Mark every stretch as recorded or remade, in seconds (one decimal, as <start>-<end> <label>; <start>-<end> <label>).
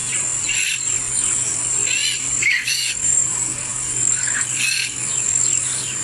0.0-1.1 recorded; 1.1-1.6 remade; 1.6-2.4 recorded; 2.4-6.0 remade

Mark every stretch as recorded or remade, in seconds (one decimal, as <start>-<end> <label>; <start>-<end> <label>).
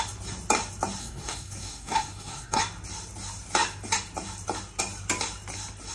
0.0-1.0 recorded; 1.0-2.6 remade; 2.6-5.9 recorded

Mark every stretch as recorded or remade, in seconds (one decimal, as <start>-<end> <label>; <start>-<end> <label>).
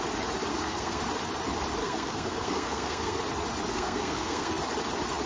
0.0-0.5 recorded; 0.5-1.0 remade; 1.0-1.8 recorded; 1.8-3.2 remade; 3.2-3.7 recorded; 3.7-4.5 remade; 4.5-5.3 recorded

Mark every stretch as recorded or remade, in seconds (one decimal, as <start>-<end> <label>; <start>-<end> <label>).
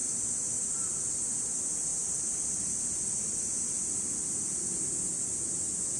0.0-1.9 remade; 1.9-3.1 recorded; 3.1-6.0 remade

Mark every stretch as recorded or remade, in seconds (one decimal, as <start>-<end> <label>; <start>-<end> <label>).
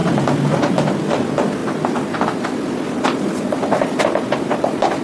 0.0-0.7 recorded; 0.7-5.0 remade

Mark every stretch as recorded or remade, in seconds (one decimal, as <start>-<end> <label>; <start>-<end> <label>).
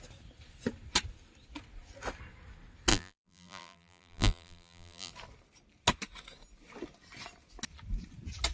0.0-2.9 recorded; 2.9-5.1 remade; 5.1-8.5 recorded